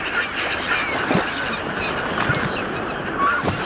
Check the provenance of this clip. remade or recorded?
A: recorded